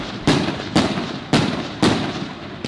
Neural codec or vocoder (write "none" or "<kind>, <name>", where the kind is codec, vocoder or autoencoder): vocoder, BigVGAN v2